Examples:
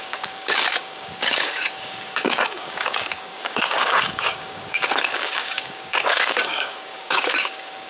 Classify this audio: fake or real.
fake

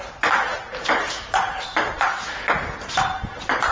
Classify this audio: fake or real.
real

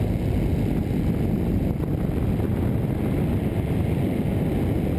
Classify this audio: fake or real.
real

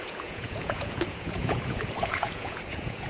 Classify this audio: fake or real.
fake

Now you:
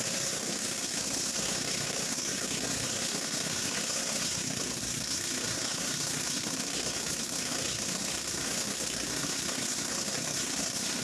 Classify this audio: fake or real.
fake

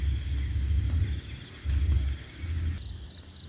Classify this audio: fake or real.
real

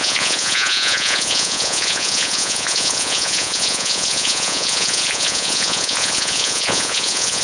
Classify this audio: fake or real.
fake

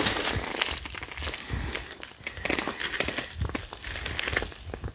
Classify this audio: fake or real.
real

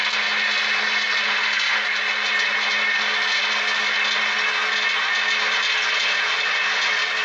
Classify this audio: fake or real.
real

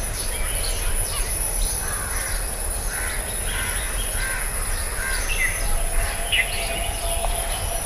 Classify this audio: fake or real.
real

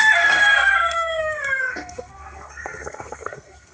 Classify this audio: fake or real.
fake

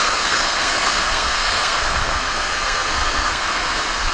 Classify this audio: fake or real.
fake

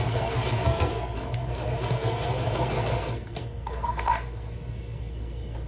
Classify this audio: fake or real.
fake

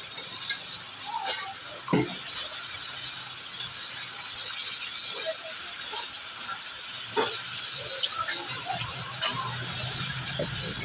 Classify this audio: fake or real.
real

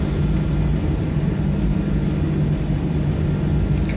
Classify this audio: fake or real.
real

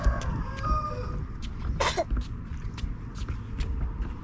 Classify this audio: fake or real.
real